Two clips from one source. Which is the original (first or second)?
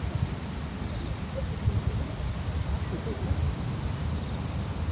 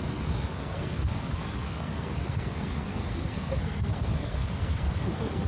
first